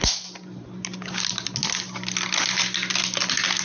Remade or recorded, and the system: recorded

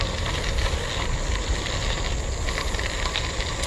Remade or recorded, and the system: recorded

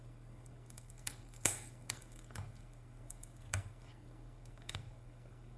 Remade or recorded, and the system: remade, codec, SNAC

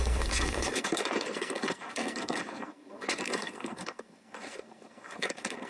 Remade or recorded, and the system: remade, codec, SNAC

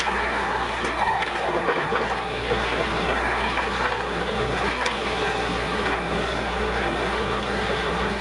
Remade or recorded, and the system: remade, codec, SNAC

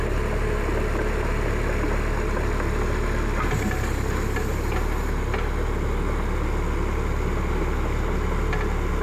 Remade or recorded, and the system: recorded